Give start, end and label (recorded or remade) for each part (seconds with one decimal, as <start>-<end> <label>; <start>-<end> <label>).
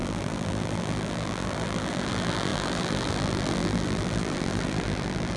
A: 0.0-5.4 remade